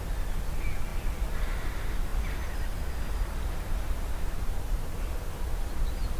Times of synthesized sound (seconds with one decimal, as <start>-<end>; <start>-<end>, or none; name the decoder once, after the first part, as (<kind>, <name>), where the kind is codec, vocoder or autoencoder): none